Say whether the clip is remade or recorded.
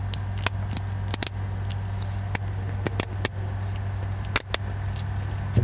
recorded